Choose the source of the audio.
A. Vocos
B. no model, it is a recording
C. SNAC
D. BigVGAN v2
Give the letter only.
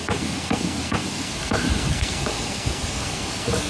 C